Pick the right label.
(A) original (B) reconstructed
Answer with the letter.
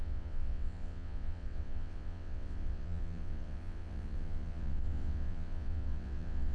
B